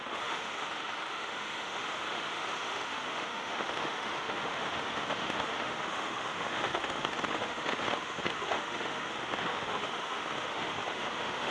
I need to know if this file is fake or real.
fake